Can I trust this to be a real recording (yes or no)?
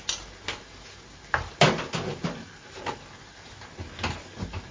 yes